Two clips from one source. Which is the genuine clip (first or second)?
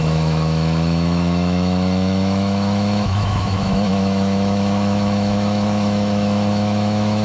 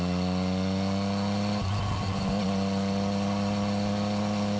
second